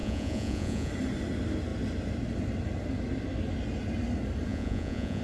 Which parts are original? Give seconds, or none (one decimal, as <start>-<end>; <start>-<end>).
0.9-4.5